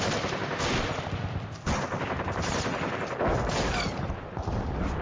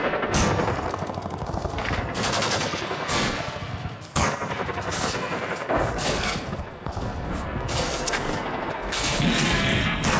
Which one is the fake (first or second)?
second